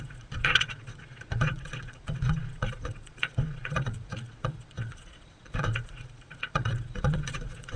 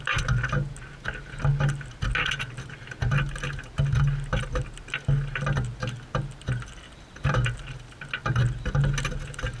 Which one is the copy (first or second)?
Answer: first